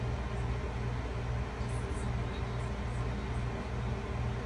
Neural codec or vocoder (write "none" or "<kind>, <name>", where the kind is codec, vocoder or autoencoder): none